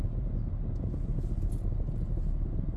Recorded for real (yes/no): yes